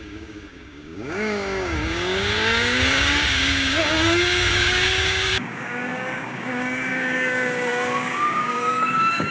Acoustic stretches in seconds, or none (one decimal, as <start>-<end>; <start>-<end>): none